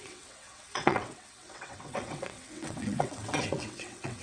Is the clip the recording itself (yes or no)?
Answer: no